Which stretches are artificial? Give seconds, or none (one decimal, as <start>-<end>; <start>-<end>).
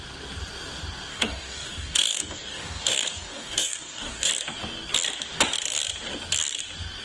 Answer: 1.1-4.3